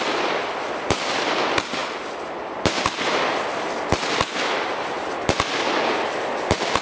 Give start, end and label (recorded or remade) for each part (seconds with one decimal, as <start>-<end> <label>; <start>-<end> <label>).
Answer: 0.0-6.8 recorded

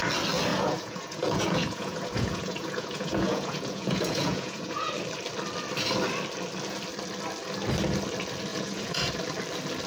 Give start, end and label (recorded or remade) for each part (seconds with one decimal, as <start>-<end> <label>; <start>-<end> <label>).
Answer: 0.0-0.5 recorded; 0.5-4.9 remade; 4.9-8.5 recorded; 8.5-9.1 remade; 9.1-9.9 recorded